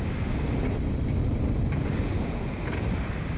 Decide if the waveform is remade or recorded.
recorded